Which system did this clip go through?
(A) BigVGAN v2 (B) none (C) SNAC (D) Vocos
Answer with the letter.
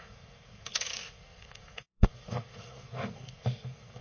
C